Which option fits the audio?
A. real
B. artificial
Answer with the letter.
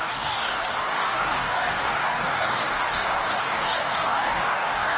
B